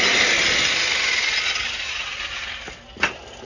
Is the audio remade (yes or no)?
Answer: no